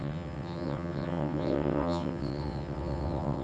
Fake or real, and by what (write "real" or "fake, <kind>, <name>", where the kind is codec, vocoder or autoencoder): fake, vocoder, WaveNeXt